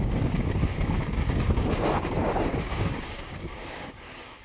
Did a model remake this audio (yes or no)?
yes